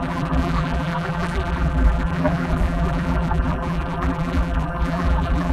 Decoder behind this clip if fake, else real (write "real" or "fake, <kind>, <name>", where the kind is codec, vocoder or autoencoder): fake, vocoder, BigVGAN v2